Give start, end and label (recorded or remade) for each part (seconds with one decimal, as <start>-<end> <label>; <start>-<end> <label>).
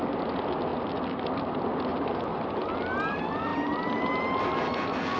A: 0.0-1.9 recorded; 1.9-2.7 remade; 2.7-3.5 recorded; 3.5-4.2 remade; 4.2-5.2 recorded